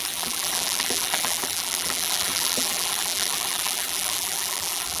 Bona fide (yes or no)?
no